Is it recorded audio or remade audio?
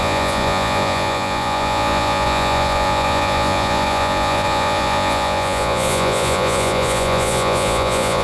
remade